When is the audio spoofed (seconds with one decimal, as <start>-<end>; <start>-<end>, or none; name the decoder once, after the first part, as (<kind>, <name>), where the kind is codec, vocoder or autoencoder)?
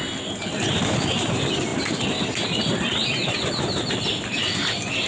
none